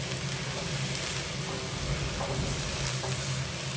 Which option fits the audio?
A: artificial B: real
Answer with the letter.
B